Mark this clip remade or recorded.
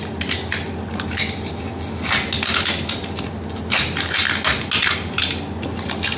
recorded